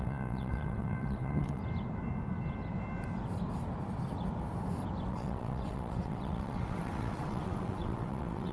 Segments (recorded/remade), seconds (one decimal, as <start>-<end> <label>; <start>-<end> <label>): 0.0-1.6 remade; 1.6-5.1 recorded; 5.1-8.5 remade